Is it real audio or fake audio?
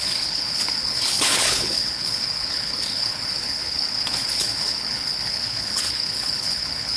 fake